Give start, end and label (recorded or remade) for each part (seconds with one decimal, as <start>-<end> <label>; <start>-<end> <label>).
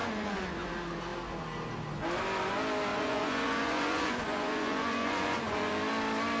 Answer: 0.0-0.7 remade; 0.7-2.9 recorded; 2.9-5.7 remade; 5.7-6.4 recorded